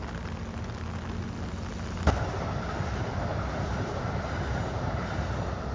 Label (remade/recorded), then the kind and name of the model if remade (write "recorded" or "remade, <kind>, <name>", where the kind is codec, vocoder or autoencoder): recorded